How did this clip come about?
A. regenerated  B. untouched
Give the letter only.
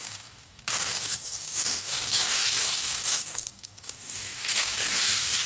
A